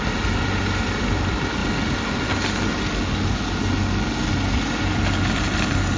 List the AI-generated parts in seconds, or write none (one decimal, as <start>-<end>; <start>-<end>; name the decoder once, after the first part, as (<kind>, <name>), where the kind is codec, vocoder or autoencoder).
0.0-1.6 (vocoder, BigVGAN v2); 4.3-6.0